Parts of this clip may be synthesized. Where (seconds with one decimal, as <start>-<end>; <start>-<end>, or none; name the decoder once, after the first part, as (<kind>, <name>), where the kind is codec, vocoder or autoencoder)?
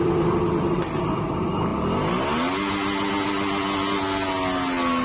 none